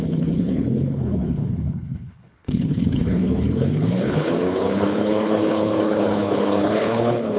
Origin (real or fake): fake